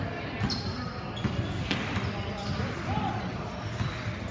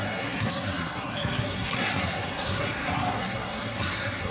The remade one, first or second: second